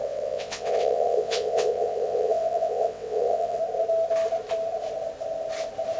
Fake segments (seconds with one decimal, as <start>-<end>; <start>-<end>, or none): 0.0-3.6